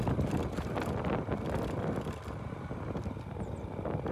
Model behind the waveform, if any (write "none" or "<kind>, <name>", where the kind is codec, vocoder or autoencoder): none